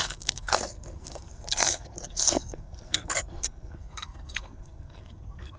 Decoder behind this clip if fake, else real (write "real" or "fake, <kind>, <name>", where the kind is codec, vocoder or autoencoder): fake, codec, SNAC